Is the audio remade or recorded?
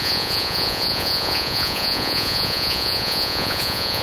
remade